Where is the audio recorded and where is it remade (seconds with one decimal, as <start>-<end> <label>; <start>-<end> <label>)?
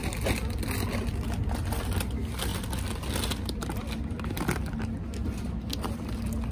0.0-6.5 recorded